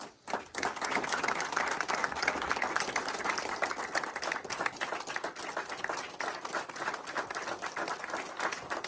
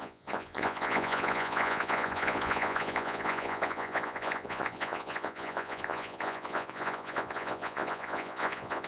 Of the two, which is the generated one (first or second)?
second